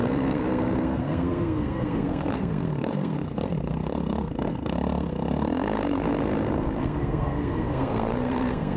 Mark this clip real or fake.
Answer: fake